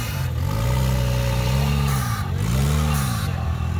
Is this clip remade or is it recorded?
recorded